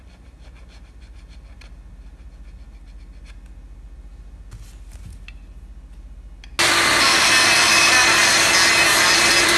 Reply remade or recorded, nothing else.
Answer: recorded